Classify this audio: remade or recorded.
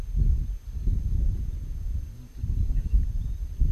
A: recorded